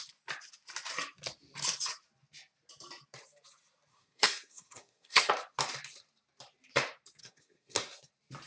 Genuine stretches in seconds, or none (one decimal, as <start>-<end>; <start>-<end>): 0.0-3.9; 5.3-7.2; 8.1-8.5